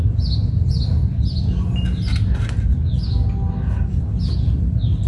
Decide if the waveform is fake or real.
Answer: real